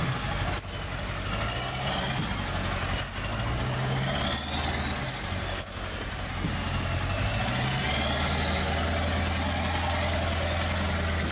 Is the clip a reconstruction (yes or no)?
no